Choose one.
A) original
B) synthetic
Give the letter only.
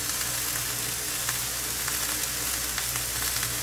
A